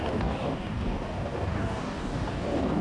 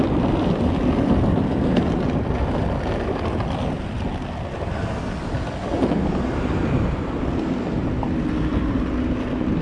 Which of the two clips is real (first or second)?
second